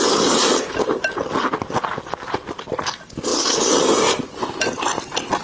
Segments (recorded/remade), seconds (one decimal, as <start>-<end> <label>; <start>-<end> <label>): 0.0-5.4 recorded